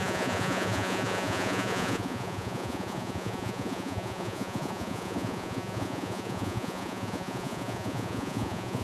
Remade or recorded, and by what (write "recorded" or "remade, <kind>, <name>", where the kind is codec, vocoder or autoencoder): remade, vocoder, Vocos